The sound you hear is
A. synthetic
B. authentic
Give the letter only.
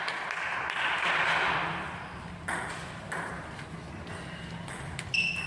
B